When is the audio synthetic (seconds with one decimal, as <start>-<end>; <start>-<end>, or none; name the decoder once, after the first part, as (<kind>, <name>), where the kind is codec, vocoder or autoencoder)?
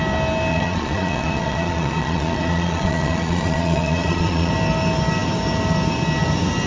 0.5-4.5 (vocoder, Vocos)